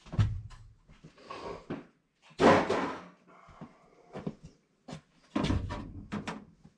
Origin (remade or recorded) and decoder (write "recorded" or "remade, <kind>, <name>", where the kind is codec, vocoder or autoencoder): recorded